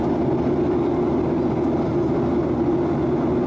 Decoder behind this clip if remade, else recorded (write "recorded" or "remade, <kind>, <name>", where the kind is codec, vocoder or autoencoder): recorded